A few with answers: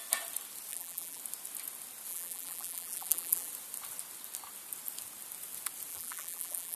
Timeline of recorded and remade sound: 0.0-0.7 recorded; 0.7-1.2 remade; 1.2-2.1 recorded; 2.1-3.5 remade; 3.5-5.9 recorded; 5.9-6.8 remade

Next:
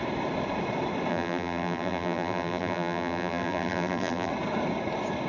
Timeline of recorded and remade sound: 0.0-1.1 recorded; 1.1-4.3 remade; 4.3-5.3 recorded

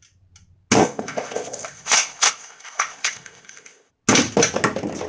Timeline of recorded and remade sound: 0.0-0.8 recorded; 0.8-3.9 remade; 3.9-5.1 recorded

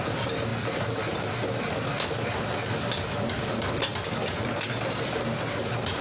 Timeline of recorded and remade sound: 0.0-6.0 recorded

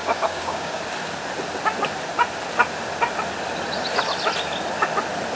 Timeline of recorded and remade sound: 0.0-0.8 remade; 0.8-5.4 recorded